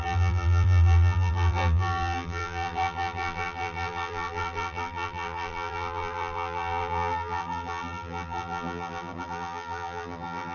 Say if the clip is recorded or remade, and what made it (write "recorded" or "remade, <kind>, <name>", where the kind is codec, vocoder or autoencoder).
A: remade, vocoder, BigVGAN v2